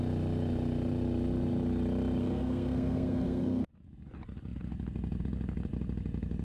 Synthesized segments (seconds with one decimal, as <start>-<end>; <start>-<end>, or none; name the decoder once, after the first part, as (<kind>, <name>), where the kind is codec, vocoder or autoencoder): 2.2-3.7 (codec, SNAC)

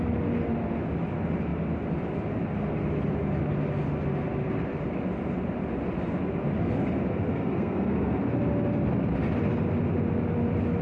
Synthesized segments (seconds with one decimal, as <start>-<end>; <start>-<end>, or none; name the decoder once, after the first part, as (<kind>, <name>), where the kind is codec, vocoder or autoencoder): 7.3-8.2 (codec, SNAC)

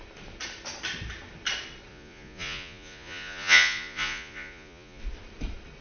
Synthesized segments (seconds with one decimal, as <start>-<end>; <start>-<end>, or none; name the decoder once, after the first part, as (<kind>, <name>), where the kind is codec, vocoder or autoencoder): 1.9-5.0 (vocoder, Vocos)

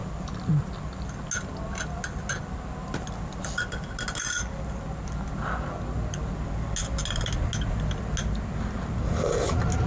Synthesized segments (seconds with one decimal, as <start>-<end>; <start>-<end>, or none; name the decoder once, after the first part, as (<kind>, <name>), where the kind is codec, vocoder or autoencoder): none

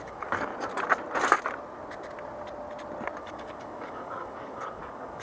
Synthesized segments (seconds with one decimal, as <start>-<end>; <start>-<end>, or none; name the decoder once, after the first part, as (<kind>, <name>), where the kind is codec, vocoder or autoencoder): 0.0-0.5 (codec, DAC); 3.2-5.2